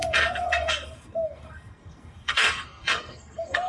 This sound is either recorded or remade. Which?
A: remade